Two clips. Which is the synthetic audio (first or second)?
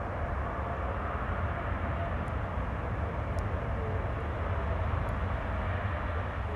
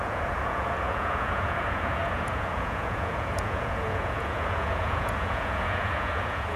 second